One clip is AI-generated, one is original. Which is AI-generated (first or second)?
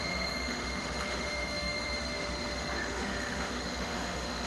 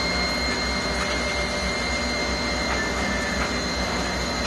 first